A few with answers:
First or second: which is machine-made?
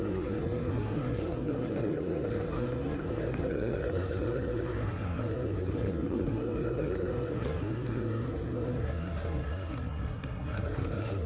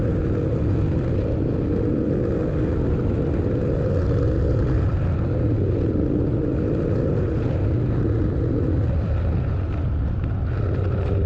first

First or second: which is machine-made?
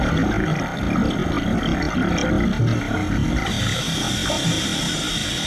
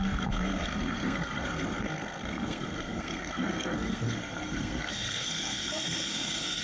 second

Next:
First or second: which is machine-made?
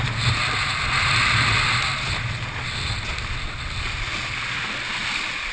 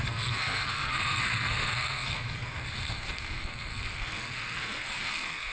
second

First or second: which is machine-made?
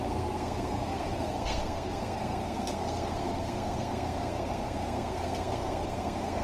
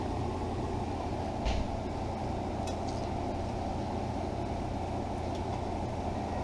first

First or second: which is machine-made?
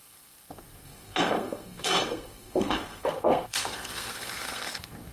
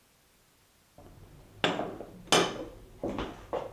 first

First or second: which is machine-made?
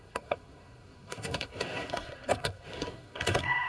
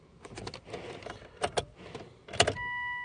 first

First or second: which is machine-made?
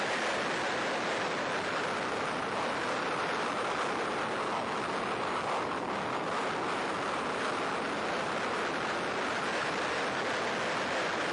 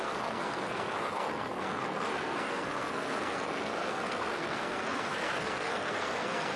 second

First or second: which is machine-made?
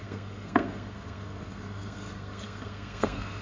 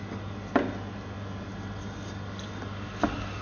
first